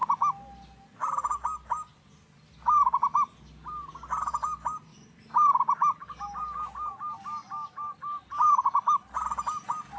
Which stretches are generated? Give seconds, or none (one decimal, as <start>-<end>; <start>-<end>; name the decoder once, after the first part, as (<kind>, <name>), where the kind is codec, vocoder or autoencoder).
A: none